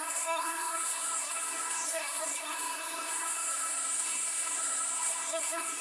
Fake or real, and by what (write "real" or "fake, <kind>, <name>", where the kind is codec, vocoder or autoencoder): fake, codec, SNAC